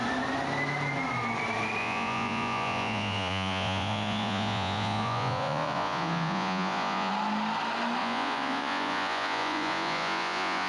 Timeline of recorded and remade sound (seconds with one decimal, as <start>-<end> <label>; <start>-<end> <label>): 0.0-1.8 recorded; 1.8-7.1 remade; 7.1-8.0 recorded; 8.0-10.7 remade